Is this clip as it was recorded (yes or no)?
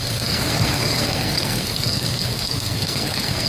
no